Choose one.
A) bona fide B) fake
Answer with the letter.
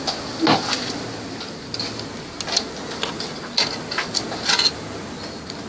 A